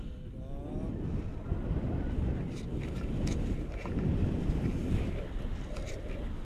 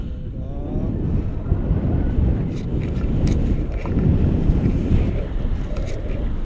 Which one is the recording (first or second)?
first